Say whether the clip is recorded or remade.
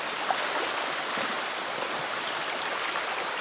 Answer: recorded